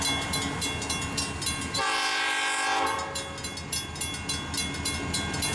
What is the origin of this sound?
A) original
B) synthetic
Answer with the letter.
A